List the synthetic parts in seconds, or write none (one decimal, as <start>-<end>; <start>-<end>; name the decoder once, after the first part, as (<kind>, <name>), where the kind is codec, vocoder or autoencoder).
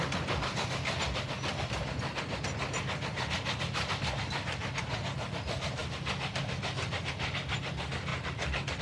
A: 8.1-8.8 (vocoder, BigVGAN v2)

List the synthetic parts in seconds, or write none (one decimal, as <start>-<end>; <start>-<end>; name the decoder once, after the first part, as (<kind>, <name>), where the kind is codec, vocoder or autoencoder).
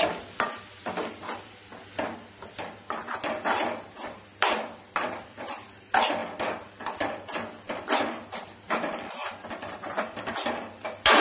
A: 0.0-1.6 (vocoder, BigVGAN v2); 2.3-6.2; 8.6-11.2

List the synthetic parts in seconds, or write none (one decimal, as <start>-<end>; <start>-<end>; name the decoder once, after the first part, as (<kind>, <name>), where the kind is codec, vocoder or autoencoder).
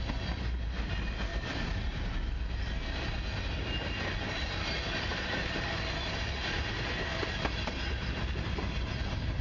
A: 1.3-2.1 (vocoder, BigVGAN v2); 5.1-6.7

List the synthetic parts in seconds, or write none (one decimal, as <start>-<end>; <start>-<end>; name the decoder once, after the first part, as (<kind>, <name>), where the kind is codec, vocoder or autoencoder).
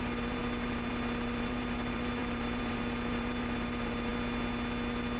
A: 0.0-4.1 (vocoder, BigVGAN v2)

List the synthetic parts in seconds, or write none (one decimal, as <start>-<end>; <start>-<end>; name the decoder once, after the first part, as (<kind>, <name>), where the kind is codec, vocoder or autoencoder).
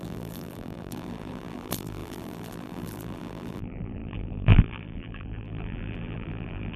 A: 0.0-6.8 (vocoder, BigVGAN v2)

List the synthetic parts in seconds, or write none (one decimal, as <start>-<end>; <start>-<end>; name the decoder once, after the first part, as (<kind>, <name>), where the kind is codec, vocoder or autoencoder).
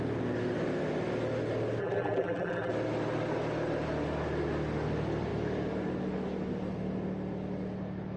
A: 1.8-2.7 (vocoder, BigVGAN v2)